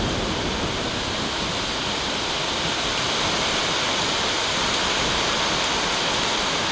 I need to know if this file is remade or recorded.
recorded